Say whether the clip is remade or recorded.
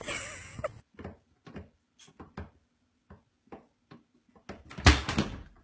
recorded